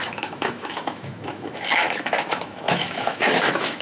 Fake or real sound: fake